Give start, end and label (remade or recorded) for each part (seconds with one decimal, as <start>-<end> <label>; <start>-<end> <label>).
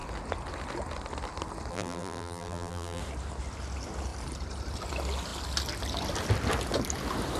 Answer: 0.0-1.7 recorded; 1.7-3.0 remade; 3.0-7.4 recorded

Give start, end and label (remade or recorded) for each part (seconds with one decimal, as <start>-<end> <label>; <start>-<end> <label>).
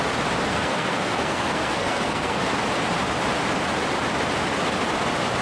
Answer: 0.0-0.5 recorded; 0.5-2.5 remade; 2.5-5.4 recorded